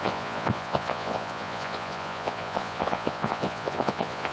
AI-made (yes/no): yes